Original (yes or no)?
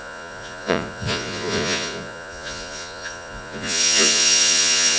no